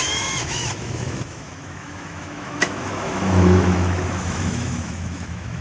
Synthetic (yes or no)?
yes